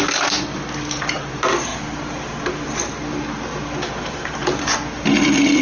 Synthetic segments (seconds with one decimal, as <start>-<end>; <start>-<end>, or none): none